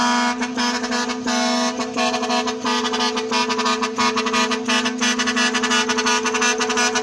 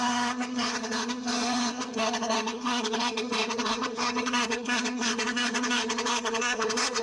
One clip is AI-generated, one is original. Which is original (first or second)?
first